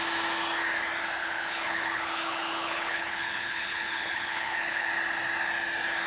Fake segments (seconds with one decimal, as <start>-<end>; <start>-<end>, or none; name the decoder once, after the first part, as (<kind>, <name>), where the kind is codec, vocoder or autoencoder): 1.2-4.9 (codec, HILCodec)